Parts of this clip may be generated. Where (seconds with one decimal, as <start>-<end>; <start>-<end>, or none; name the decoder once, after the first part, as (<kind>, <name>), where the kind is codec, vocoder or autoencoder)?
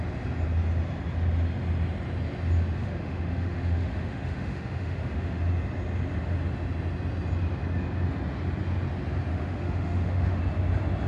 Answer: 2.8-5.4 (autoencoder, DAC-VAE); 9.3-10.4